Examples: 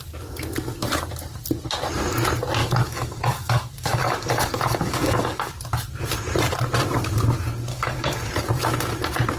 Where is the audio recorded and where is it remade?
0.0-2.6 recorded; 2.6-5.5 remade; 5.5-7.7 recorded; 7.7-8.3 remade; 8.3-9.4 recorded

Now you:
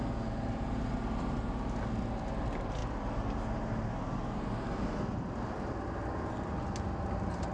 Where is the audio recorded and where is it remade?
0.0-7.5 recorded

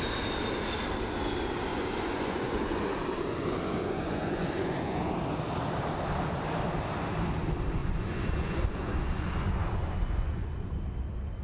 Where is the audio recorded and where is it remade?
0.0-1.7 recorded; 1.7-2.8 remade; 2.8-3.3 recorded; 3.3-5.0 remade; 5.0-7.8 recorded; 7.8-10.8 remade; 10.8-11.4 recorded

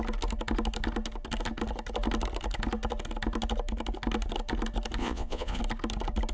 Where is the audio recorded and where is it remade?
0.0-5.0 recorded; 5.0-5.6 remade; 5.6-6.3 recorded

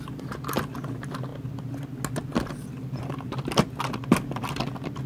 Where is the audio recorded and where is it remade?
0.0-5.1 recorded

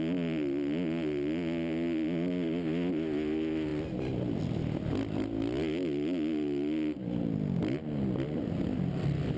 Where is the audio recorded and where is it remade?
0.0-9.4 recorded

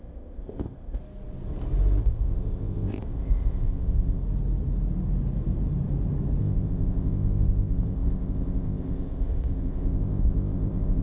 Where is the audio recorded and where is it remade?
0.0-1.0 remade; 1.0-2.0 recorded; 2.0-4.2 remade; 4.2-6.4 recorded; 6.4-11.0 remade